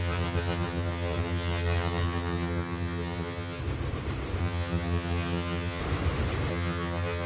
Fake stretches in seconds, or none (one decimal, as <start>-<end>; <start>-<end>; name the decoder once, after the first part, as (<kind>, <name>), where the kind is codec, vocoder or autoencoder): 0.0-3.6 (vocoder, HiFi-GAN); 4.4-5.8; 6.5-7.3